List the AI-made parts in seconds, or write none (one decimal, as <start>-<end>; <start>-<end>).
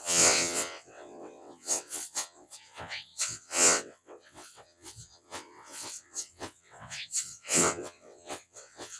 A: 0.0-9.0